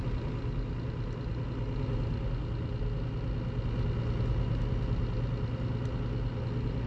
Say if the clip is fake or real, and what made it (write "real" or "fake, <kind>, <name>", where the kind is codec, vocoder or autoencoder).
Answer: real